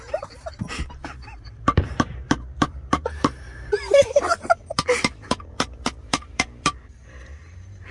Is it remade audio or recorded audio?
remade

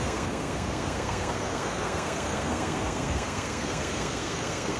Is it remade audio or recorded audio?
remade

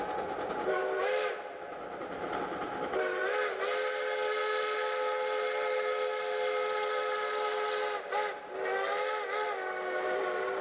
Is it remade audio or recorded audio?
recorded